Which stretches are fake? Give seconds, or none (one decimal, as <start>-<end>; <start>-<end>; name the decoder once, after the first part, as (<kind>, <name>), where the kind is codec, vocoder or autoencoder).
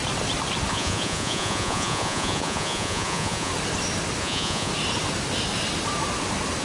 0.7-3.5 (vocoder, Vocos); 4.2-4.7